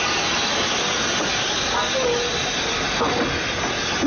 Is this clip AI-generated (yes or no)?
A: no